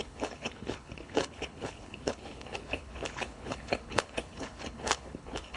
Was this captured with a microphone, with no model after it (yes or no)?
no